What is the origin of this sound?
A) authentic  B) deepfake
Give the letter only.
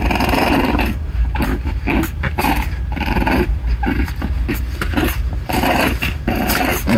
B